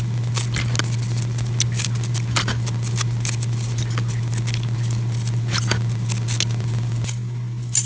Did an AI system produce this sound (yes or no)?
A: no